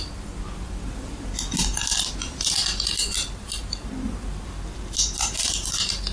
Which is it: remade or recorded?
recorded